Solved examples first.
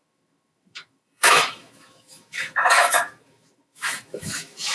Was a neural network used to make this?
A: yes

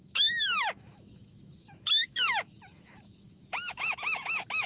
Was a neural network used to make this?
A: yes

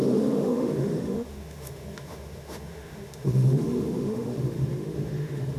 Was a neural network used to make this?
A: yes